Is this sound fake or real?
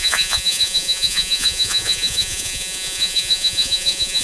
fake